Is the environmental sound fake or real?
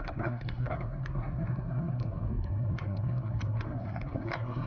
fake